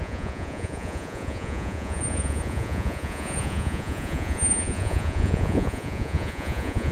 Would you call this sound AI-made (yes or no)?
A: yes